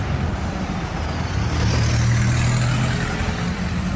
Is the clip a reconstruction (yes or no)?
no